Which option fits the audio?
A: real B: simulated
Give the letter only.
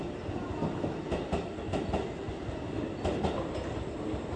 A